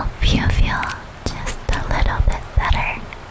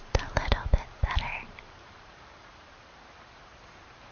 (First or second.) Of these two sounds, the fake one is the second